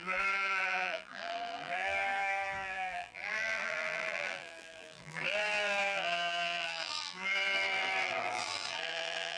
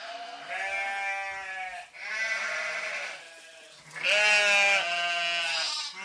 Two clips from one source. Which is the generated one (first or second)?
first